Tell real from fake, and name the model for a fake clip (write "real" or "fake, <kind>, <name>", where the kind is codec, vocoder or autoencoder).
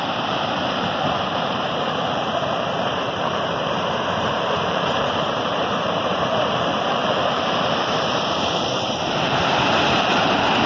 fake, vocoder, BigVGAN v2